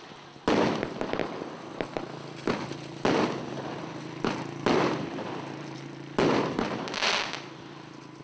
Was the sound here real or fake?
real